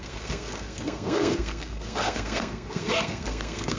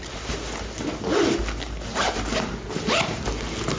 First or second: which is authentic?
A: second